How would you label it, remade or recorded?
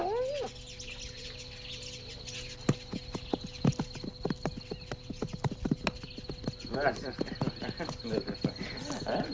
recorded